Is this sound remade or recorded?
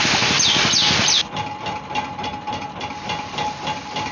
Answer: recorded